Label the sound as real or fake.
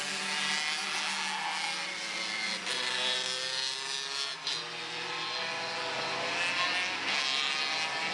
real